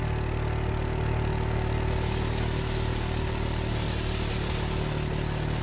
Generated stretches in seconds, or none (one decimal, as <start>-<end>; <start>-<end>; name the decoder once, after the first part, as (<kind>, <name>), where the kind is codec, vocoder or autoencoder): none